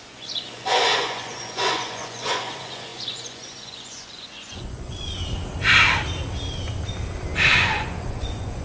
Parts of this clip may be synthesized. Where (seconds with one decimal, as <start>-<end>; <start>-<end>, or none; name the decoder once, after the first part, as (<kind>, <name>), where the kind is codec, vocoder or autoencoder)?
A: 0.0-5.2 (vocoder, Vocos); 7.6-8.6